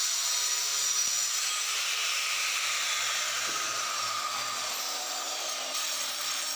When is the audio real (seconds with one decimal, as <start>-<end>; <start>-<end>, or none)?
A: 0.7-2.5